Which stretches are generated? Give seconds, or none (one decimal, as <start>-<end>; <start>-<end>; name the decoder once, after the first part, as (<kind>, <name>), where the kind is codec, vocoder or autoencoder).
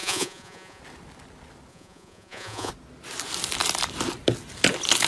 0.0-0.8 (vocoder, Vocos); 1.7-2.7